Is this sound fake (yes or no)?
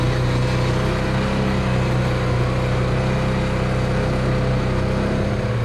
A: no